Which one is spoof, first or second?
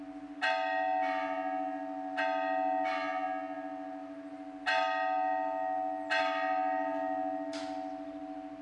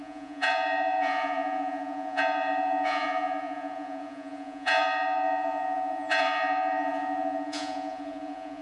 second